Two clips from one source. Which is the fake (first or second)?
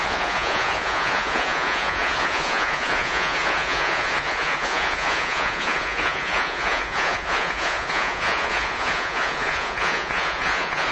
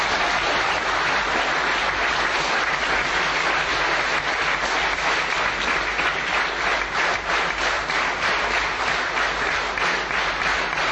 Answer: first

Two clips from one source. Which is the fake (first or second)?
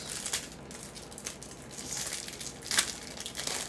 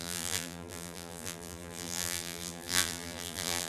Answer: second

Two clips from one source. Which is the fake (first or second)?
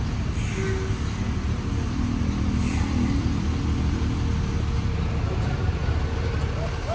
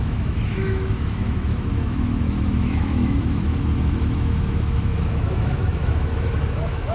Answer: second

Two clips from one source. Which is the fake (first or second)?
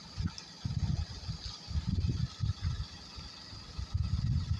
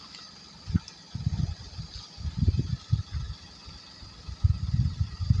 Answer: first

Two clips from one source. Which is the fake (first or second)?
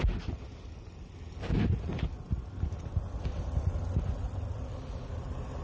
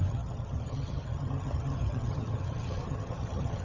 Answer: second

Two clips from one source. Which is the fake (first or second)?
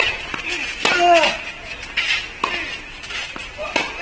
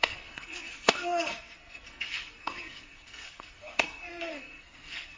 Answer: second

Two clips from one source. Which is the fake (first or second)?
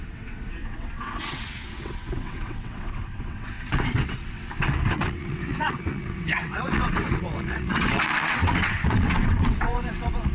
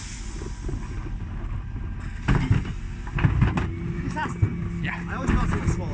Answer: first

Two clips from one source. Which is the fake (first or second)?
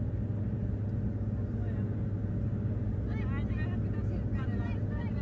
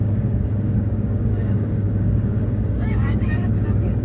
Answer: second